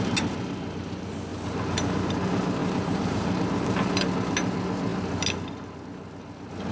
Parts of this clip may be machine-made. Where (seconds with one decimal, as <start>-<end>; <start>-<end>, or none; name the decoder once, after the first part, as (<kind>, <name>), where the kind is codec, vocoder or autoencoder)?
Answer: 1.3-2.1 (vocoder, BigVGAN v2); 2.6-4.1